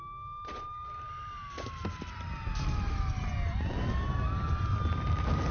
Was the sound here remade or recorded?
recorded